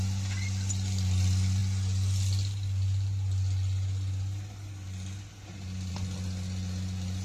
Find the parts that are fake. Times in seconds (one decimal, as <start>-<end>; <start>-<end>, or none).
none